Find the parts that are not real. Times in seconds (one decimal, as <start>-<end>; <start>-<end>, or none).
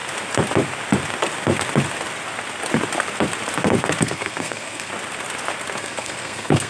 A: 4.0-4.9; 5.8-6.7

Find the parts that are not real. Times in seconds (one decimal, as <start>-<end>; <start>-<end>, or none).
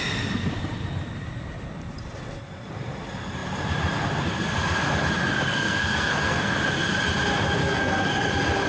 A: 5.5-6.5; 7.6-8.1